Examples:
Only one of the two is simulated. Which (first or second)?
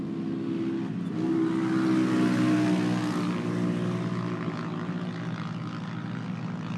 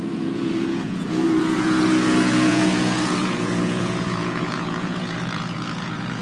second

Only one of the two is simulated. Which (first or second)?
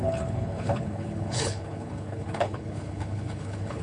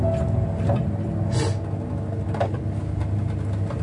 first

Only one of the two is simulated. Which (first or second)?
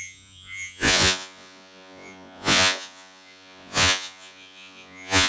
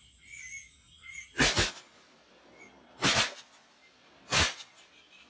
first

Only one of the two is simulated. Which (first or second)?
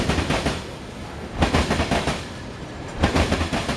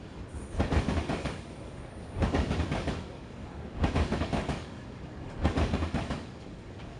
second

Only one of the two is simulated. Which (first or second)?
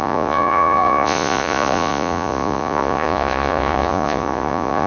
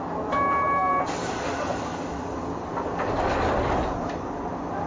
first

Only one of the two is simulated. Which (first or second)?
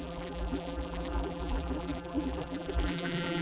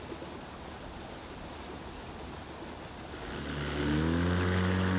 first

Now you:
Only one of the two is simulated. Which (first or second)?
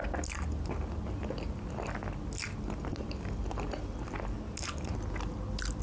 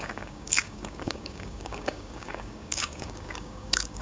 second